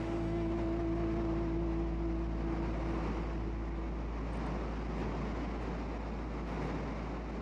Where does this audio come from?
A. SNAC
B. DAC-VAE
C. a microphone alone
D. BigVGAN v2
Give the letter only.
C